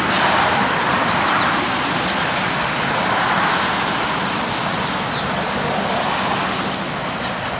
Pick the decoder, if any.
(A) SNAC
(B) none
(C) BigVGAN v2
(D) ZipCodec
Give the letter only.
B